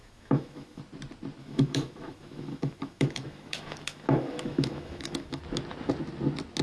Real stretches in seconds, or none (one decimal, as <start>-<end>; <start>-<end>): 0.8-1.4; 5.4-6.6